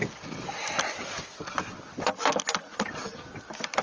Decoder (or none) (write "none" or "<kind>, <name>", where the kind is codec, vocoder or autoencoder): none